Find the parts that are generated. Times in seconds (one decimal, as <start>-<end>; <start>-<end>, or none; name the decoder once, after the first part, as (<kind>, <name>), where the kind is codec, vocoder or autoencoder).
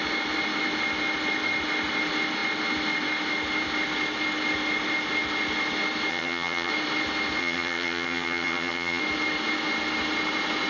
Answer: 6.1-6.7 (vocoder, HiFi-GAN); 7.4-9.0